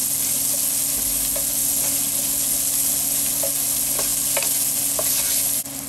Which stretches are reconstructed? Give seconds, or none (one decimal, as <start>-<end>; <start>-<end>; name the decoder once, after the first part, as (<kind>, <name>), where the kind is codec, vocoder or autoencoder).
none